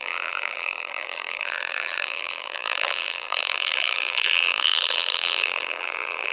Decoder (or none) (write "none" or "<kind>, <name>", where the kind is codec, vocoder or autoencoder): vocoder, BigVGAN v2